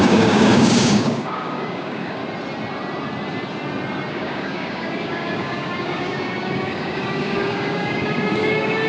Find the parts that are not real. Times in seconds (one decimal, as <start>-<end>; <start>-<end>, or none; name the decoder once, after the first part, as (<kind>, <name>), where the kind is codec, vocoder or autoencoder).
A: 0.0-2.2 (codec, DAC); 4.1-8.9